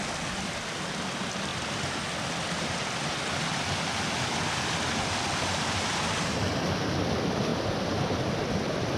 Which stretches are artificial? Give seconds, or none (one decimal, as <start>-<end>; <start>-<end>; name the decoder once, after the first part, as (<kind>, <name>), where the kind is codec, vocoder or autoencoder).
none